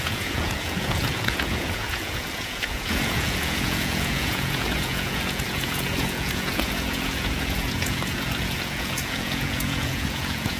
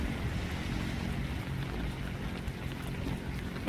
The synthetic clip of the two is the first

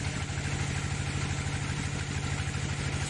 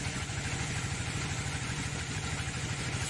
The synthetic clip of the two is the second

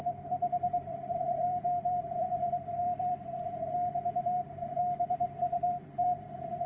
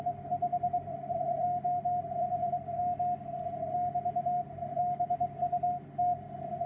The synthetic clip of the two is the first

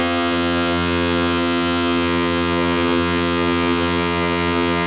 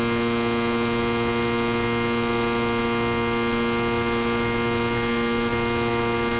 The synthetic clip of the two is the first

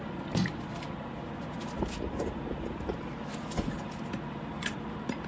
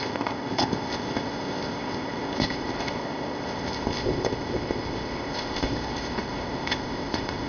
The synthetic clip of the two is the second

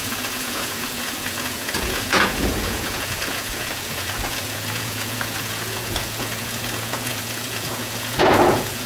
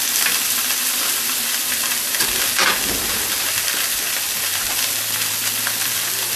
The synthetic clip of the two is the first